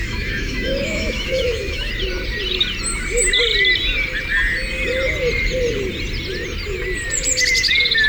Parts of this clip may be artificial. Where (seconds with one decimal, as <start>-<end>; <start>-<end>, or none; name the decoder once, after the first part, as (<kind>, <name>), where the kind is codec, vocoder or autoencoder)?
0.0-1.9 (autoencoder, DAC-VAE)